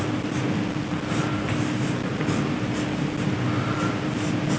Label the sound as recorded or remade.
recorded